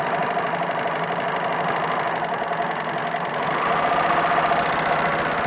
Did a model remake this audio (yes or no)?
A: no